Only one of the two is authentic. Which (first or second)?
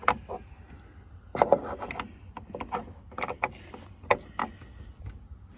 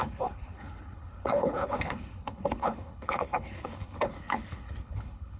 first